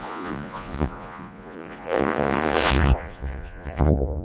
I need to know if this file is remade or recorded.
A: remade